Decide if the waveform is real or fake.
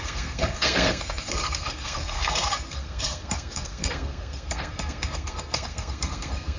fake